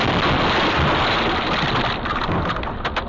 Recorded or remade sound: recorded